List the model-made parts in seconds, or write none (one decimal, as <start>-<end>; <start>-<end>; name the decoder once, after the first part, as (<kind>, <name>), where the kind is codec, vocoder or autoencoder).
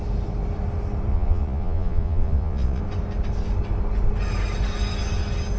1.1-2.8 (vocoder, Vocos)